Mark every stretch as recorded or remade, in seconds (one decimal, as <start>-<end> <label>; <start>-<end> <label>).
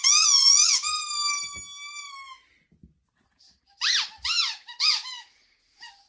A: 0.0-1.1 remade; 1.1-4.8 recorded; 4.8-6.1 remade